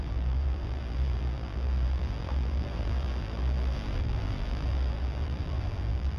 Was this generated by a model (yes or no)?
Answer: yes